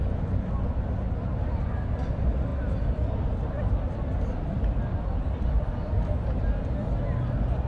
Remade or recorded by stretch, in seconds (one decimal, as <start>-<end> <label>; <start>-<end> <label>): 0.0-7.7 recorded